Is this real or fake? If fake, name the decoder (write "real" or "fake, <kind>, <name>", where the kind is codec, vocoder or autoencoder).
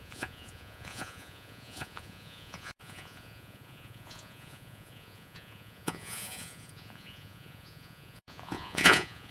fake, vocoder, Vocos